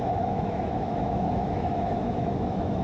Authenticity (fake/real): fake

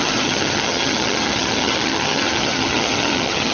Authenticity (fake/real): fake